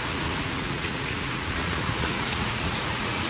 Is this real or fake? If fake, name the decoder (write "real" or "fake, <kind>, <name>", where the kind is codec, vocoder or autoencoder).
fake, vocoder, Vocos